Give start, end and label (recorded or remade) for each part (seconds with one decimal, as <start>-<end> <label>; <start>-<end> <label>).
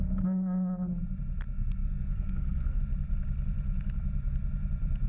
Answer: 0.0-1.8 recorded; 1.8-2.8 remade; 2.8-5.1 recorded